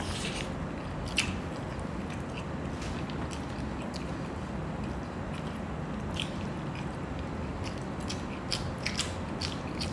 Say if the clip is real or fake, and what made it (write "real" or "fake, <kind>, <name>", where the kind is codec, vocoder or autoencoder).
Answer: real